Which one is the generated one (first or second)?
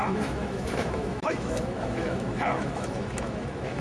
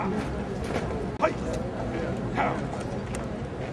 first